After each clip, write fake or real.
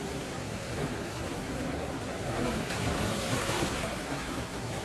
fake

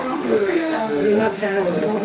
fake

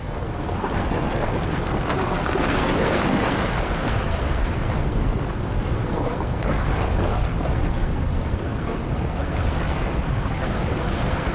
fake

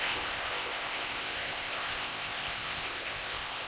fake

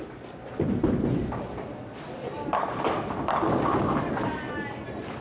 real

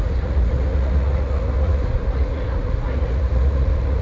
fake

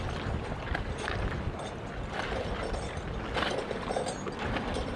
real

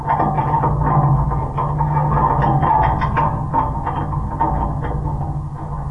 real